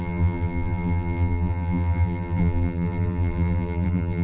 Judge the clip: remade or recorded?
remade